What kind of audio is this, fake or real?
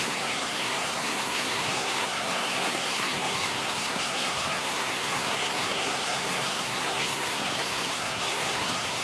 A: fake